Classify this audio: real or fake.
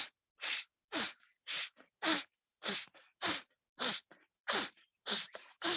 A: fake